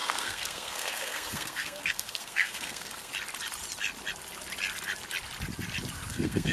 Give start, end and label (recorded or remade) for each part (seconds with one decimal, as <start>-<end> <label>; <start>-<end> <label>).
0.0-3.1 remade; 3.1-6.1 recorded; 6.1-6.5 remade